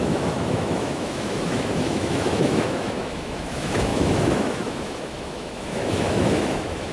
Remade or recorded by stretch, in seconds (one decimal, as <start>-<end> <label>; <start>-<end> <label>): 0.0-6.9 remade